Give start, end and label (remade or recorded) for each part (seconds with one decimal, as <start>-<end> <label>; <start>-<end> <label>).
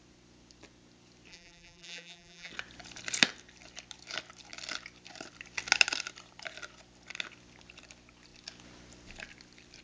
0.0-1.3 recorded; 1.3-2.5 remade; 2.5-9.8 recorded